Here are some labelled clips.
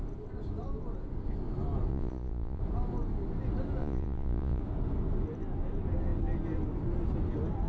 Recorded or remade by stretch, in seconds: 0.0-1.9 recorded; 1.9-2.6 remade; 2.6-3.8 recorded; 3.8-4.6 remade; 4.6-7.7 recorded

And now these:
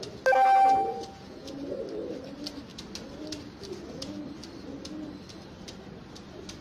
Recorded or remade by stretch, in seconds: 0.0-0.9 recorded; 0.9-1.5 remade; 1.5-6.6 recorded